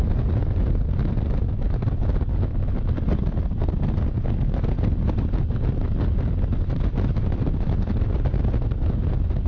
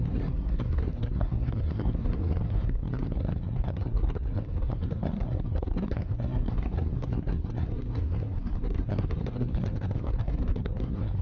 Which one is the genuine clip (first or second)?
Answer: first